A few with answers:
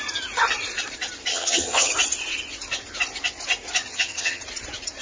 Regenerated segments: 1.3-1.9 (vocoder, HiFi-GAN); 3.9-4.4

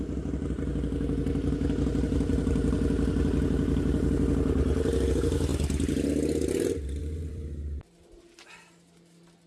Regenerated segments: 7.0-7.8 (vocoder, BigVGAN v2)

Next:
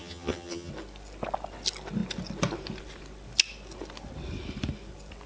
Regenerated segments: 0.0-0.7 (vocoder, HiFi-GAN)

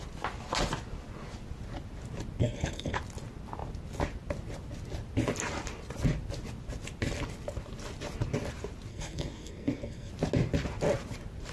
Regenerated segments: 2.4-3.0 (codec, SNAC); 8.9-10.1

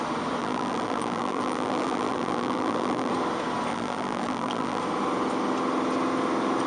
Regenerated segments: 0.4-3.1 (vocoder, BigVGAN v2); 3.7-4.8

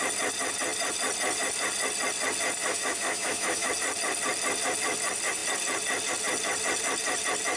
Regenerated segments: 2.6-3.7 (autoencoder, DAC-VAE)

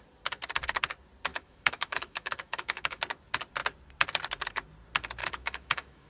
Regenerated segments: 1.3-3.0 (autoencoder, DAC-VAE); 5.2-6.1

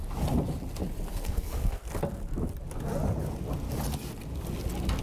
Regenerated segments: 1.1-1.8 (codec, SNAC)